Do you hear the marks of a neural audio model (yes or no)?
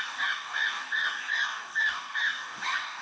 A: yes